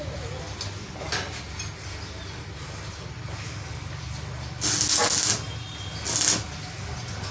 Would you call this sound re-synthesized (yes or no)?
no